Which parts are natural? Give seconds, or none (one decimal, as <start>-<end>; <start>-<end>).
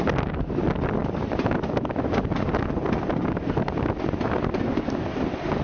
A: 0.0-5.6